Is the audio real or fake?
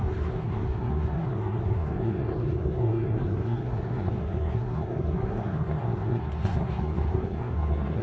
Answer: fake